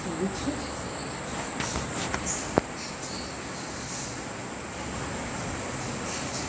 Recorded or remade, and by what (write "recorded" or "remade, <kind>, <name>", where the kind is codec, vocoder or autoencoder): recorded